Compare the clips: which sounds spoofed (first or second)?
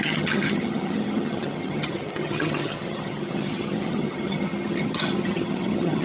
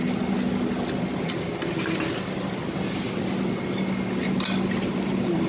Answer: first